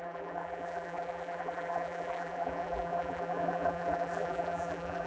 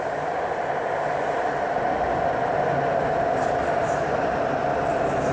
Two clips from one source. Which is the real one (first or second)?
second